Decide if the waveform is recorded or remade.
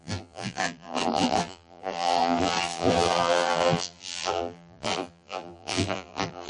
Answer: remade